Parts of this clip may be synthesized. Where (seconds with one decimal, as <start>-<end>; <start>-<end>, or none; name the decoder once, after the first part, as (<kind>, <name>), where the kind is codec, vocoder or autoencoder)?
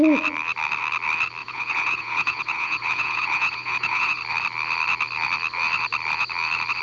1.4-4.2 (vocoder, Vocos)